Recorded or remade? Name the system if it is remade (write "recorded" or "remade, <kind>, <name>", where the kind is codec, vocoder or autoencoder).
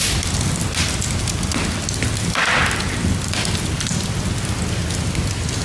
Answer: recorded